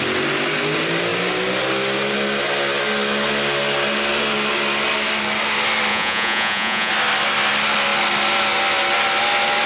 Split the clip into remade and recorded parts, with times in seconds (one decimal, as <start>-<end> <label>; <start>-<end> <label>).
0.0-5.9 recorded; 5.9-6.9 remade; 6.9-9.7 recorded